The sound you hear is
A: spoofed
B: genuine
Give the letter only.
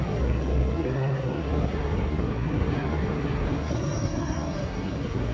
A